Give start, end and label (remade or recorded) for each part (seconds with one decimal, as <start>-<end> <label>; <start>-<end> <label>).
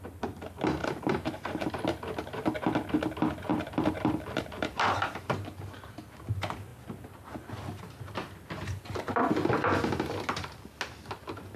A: 0.0-0.8 recorded; 0.8-1.7 remade; 1.7-3.5 recorded; 3.5-5.9 remade; 5.9-11.6 recorded